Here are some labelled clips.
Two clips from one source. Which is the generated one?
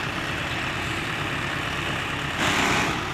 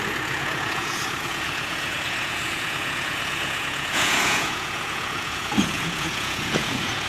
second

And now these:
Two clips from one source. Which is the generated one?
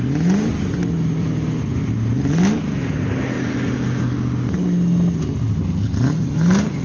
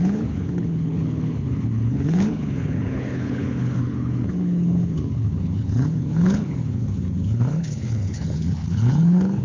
second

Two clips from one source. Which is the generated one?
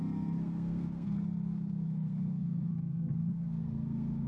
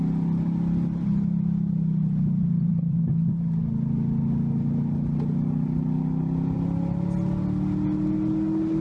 first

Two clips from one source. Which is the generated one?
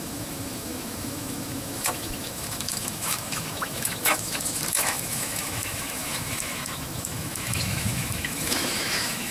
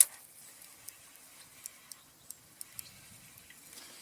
first